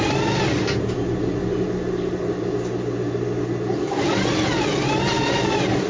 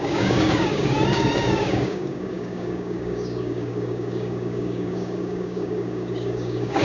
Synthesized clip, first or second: second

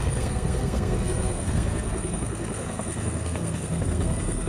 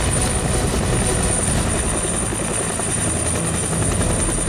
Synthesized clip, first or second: first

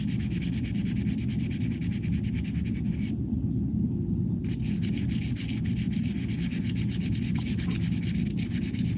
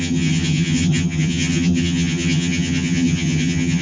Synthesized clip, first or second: second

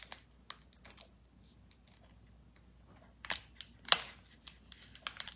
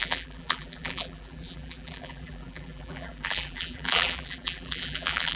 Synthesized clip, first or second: second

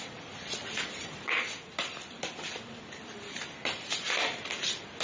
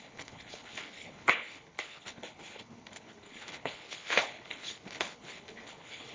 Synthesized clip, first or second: second